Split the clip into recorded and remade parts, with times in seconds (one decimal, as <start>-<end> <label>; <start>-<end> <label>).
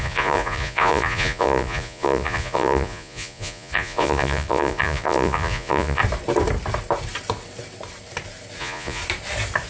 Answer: 0.0-6.0 remade; 6.0-8.6 recorded; 8.6-9.0 remade; 9.0-9.7 recorded